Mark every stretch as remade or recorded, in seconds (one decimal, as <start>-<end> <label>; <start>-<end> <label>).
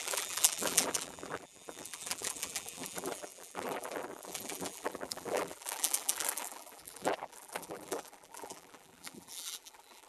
0.0-10.1 remade